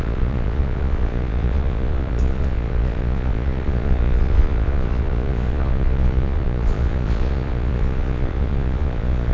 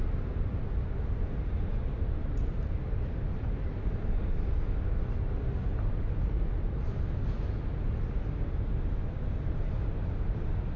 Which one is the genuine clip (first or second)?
second